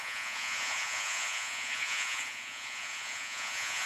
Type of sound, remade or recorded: remade